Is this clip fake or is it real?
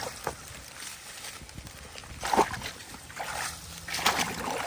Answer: real